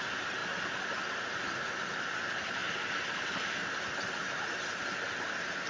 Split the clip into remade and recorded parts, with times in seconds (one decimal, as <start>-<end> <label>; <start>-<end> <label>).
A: 0.0-5.7 recorded

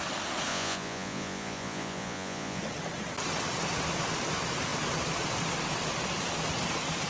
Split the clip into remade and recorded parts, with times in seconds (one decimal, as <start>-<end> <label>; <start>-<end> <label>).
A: 0.0-0.5 recorded; 0.5-2.6 remade; 2.6-7.1 recorded

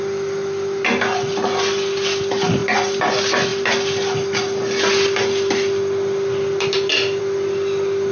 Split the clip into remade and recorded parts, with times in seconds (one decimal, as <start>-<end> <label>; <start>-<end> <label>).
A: 0.0-8.1 recorded

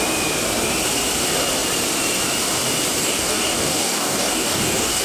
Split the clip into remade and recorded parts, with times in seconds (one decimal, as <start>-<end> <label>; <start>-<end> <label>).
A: 0.0-3.0 recorded; 3.0-5.0 remade